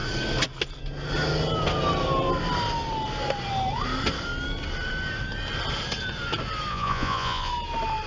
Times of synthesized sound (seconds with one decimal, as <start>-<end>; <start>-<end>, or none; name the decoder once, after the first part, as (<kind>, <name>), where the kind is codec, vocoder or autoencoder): 6.7-7.5 (vocoder, Vocos)